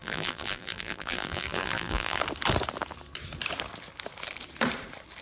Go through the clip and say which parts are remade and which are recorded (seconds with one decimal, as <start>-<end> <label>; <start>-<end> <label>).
0.0-2.2 remade; 2.2-5.2 recorded

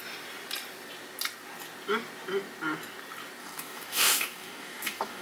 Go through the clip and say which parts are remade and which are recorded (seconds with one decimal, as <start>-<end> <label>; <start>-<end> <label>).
0.0-3.4 recorded; 3.4-5.2 remade

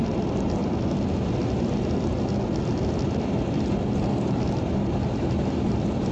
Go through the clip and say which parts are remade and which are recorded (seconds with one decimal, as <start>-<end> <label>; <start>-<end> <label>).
0.0-4.9 recorded; 4.9-6.1 remade

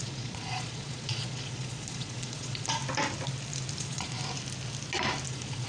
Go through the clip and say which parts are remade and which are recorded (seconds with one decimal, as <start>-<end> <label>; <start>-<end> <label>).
0.0-2.8 remade; 2.8-3.8 recorded; 3.8-4.2 remade; 4.2-5.3 recorded; 5.3-5.7 remade

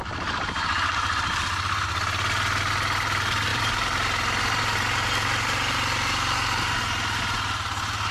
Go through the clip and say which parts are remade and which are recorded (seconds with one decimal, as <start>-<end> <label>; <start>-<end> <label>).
0.0-3.5 recorded; 3.5-4.4 remade; 4.4-8.1 recorded

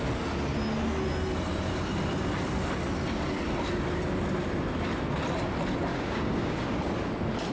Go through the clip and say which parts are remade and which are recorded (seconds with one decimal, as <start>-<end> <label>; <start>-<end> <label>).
0.0-5.9 recorded; 5.9-6.8 remade; 6.8-7.5 recorded